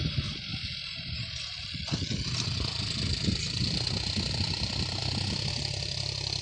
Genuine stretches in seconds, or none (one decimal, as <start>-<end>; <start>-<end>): 0.5-4.3; 5.0-5.5